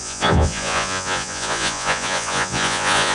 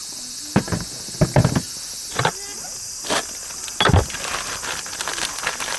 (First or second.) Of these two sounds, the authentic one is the second